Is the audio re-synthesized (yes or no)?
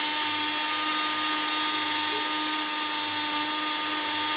no